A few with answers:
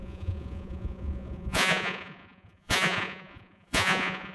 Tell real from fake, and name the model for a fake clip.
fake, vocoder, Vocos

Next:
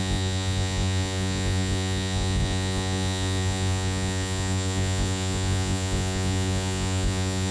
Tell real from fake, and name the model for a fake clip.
fake, vocoder, Vocos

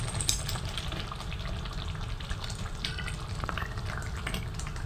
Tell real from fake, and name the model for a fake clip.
real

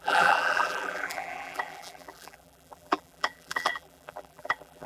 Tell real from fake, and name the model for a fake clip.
fake, vocoder, BigVGAN v2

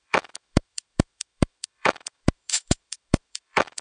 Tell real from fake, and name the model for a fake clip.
fake, autoencoder, DAC-VAE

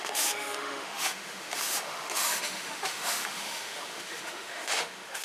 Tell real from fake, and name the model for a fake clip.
fake, autoencoder, DAC-VAE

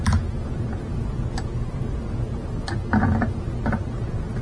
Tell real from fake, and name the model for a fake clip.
real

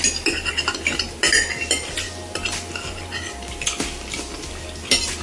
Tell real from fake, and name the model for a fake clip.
real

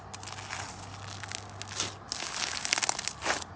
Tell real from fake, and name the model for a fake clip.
real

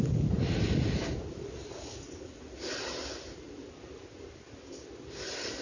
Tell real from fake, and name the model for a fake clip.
real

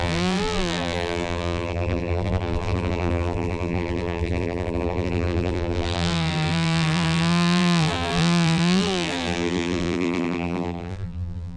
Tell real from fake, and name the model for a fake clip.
fake, vocoder, BigVGAN v2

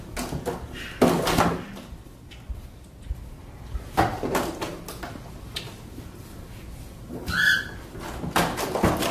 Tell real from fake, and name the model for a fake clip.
real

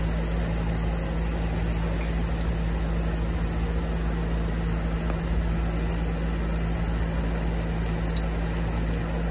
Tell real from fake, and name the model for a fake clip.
real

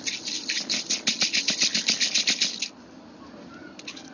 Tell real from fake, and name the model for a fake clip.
real